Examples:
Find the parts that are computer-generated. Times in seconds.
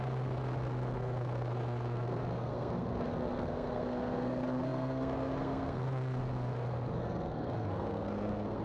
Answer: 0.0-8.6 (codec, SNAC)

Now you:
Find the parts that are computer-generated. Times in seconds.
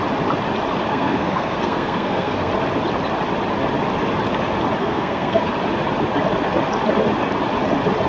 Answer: 0.9-2.5 (codec, SNAC); 4.8-5.5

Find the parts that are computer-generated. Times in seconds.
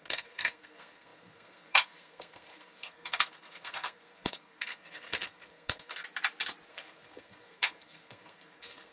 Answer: 0.0-6.0 (codec, SNAC); 6.7-8.9